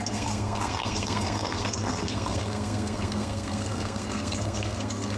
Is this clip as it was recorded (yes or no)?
no